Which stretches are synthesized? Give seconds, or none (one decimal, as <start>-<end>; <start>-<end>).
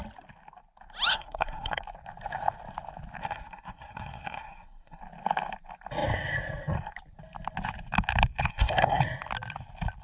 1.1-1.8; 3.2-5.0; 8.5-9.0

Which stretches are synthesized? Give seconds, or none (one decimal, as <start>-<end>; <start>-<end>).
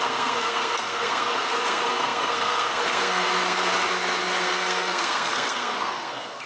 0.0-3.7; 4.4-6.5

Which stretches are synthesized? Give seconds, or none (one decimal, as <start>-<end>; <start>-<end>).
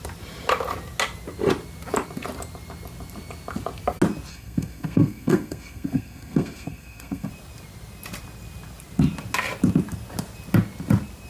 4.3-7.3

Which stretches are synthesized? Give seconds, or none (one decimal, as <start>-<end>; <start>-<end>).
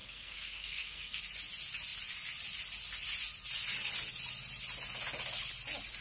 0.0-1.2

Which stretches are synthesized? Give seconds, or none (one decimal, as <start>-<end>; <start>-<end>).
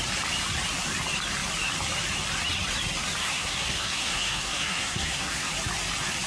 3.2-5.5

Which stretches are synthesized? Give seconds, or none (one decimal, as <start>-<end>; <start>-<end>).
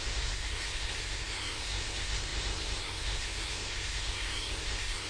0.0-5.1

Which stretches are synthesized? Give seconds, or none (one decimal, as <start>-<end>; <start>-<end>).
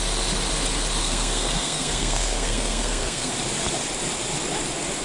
1.0-3.3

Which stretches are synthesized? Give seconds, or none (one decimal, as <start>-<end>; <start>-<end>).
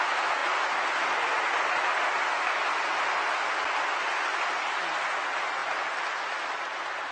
none